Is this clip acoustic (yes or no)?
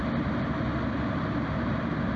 yes